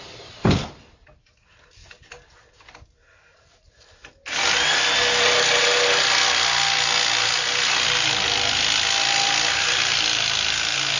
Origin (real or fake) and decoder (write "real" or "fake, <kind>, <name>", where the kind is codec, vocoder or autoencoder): real